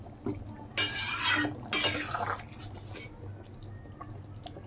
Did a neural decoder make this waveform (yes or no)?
no